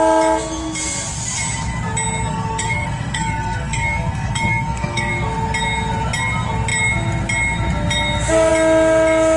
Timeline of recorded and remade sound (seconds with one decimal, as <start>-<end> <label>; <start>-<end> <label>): 0.0-2.3 recorded; 2.3-5.1 remade; 5.1-9.4 recorded